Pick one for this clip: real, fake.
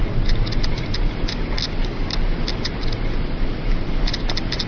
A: real